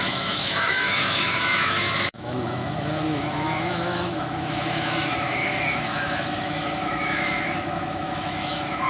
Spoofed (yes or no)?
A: yes